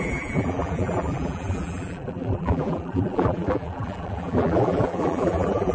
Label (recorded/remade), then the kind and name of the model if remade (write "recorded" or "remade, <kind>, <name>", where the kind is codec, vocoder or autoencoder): remade, vocoder, BigVGAN v2